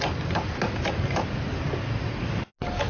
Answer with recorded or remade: recorded